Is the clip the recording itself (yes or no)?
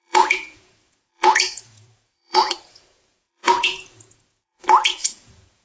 no